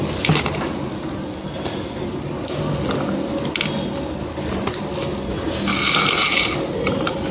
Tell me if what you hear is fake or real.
real